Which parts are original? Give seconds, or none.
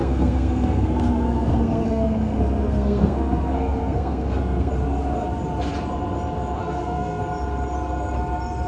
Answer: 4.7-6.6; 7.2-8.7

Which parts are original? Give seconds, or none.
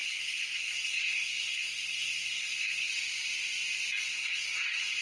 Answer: 2.9-4.1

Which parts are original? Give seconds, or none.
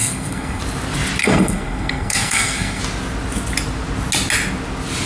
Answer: 0.6-1.2; 2.8-5.1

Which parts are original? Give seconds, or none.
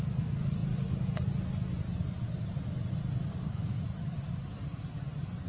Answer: 0.0-3.3; 3.8-5.5